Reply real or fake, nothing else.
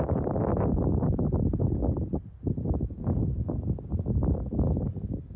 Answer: real